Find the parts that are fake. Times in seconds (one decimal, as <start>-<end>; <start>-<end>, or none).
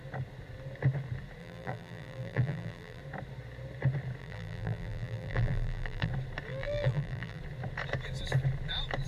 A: 1.4-3.0; 4.2-6.1; 6.5-7.4